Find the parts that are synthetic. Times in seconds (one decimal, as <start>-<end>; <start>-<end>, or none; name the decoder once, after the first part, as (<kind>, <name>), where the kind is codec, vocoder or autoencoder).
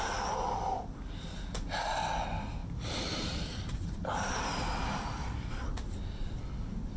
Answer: 2.6-5.5 (vocoder, BigVGAN v2)